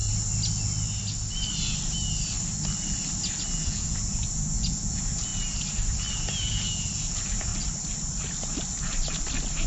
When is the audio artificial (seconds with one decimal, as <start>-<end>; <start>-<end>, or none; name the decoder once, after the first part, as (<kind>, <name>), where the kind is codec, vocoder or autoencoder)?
3.5-5.3 (vocoder, Vocos); 6.1-7.5

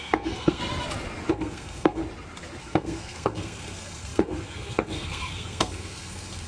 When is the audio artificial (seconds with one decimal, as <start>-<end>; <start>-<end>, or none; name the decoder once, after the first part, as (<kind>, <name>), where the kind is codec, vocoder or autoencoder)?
0.0-0.6 (codec, SNAC); 1.3-2.0; 2.6-6.5

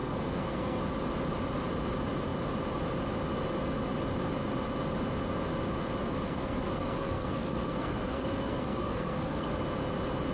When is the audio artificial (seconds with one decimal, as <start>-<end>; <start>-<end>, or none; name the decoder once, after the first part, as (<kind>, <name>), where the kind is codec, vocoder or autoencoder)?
0.0-0.8 (codec, SNAC); 6.0-9.5

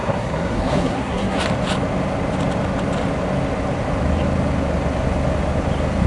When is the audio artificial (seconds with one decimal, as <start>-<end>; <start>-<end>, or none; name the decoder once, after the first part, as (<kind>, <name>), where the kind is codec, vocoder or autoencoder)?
0.0-1.4 (codec, SNAC)

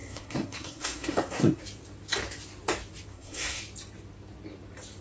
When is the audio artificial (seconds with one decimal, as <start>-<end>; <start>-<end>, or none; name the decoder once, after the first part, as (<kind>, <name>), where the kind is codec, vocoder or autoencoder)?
0.0-1.6 (codec, SNAC); 3.1-3.6

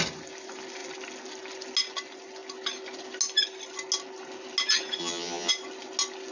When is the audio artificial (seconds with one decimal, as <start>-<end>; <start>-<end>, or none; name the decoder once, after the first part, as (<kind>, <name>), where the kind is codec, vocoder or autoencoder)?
5.0-5.5 (vocoder, HiFi-GAN)

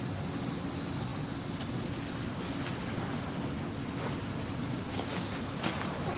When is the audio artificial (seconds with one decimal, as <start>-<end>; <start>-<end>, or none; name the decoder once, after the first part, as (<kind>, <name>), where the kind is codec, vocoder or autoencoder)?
4.9-5.6 (codec, DAC)